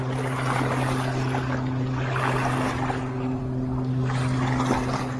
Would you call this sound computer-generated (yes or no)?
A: no